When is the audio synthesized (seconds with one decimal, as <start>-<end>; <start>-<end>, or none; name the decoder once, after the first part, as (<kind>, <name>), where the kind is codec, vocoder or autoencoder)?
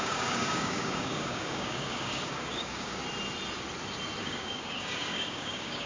0.0-3.0 (codec, DAC); 4.2-5.9